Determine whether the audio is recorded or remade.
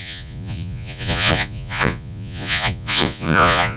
remade